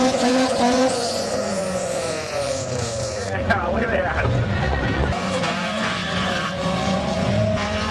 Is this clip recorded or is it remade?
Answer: remade